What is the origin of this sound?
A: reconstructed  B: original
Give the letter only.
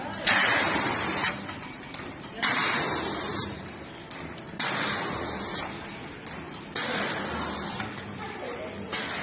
A